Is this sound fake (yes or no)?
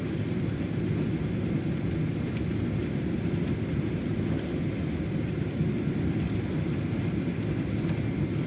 no